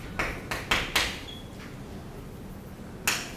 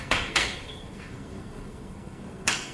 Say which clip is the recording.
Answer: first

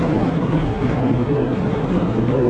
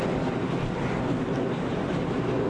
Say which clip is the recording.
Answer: second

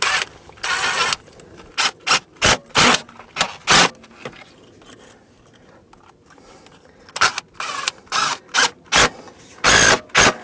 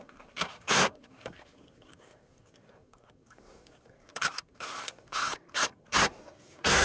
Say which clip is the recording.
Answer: first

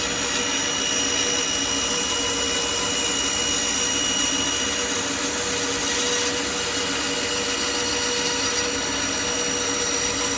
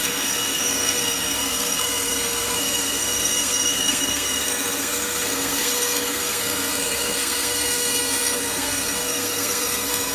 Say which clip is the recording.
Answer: first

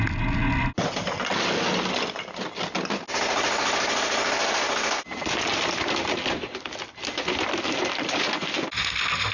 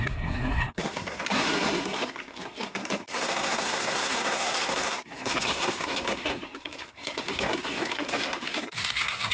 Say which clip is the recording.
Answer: first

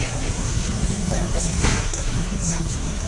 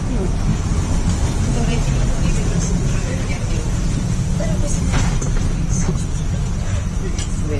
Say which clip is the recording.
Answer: second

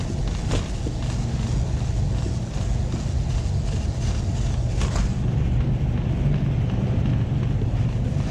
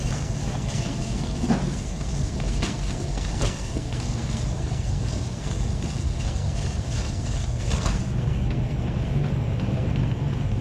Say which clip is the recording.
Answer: first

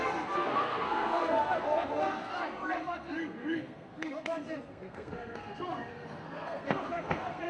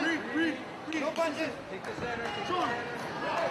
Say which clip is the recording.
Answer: second